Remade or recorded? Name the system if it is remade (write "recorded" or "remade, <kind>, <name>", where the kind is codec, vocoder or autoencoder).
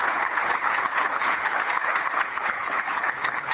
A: remade, codec, HILCodec